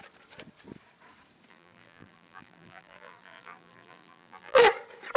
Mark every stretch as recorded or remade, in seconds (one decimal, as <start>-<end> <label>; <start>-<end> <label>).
0.0-1.5 recorded; 1.5-4.6 remade; 4.6-5.2 recorded